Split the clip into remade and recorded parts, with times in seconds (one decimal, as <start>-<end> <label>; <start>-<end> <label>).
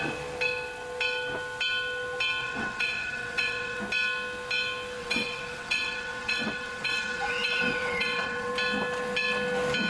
0.0-2.4 recorded; 2.4-3.8 remade; 3.8-5.0 recorded; 5.0-8.5 remade; 8.5-9.9 recorded